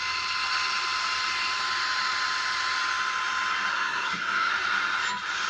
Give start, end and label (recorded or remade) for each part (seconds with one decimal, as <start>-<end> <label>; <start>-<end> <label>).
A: 0.0-3.7 recorded; 3.7-4.5 remade; 4.5-5.5 recorded